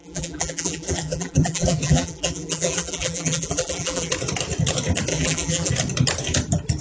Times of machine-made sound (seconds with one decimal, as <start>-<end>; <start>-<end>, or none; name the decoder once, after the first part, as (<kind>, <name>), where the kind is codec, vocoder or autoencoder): 0.0-4.1 (vocoder, BigVGAN v2); 5.1-5.7